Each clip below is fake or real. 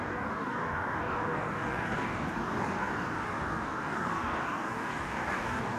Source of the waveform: fake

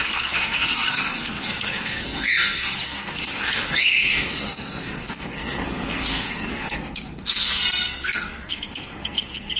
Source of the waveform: fake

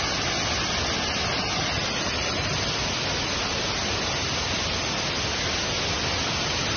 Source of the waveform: real